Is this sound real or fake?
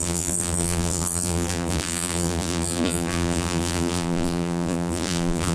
fake